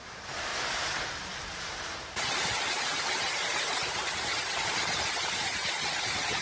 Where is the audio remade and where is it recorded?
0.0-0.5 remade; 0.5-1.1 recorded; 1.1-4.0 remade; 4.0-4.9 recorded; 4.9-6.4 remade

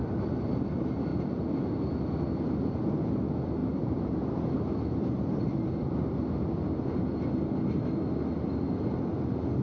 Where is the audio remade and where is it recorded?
0.0-1.1 recorded; 1.1-2.7 remade; 2.7-3.6 recorded; 3.6-5.9 remade; 5.9-9.6 recorded

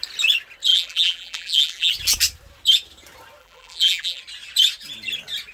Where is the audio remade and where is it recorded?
0.0-0.7 recorded; 0.7-1.9 remade; 1.9-3.4 recorded; 3.4-4.2 remade; 4.2-5.5 recorded

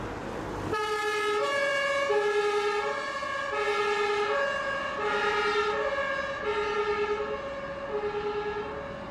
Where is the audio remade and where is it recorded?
0.0-9.1 recorded